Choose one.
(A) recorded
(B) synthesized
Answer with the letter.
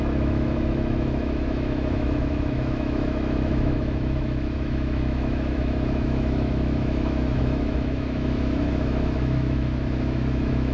B